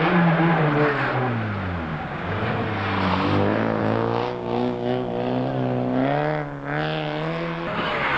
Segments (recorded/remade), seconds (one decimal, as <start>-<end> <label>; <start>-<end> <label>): 0.0-1.9 recorded; 1.9-2.4 remade; 2.4-3.8 recorded; 3.8-5.1 remade; 5.1-8.2 recorded